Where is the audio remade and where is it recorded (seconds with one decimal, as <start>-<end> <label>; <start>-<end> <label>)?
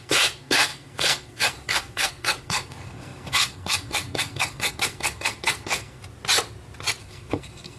0.0-6.0 remade; 6.0-7.0 recorded; 7.0-7.8 remade